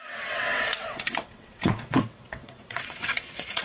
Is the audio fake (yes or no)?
yes